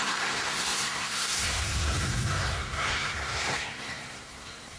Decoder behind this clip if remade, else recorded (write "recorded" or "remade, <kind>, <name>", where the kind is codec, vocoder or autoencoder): remade, codec, SNAC